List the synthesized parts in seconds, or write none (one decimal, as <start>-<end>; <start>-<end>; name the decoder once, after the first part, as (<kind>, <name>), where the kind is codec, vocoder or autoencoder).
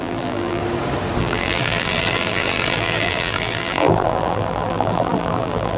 0.0-0.6 (vocoder, BigVGAN v2); 1.2-5.8